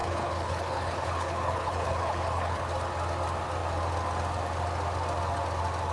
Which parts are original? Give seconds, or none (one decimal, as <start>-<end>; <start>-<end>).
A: 2.7-5.9